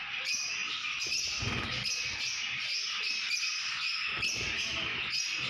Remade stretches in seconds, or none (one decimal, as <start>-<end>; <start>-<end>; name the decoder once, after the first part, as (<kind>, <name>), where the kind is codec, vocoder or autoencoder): none